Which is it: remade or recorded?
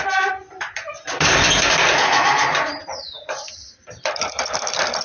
remade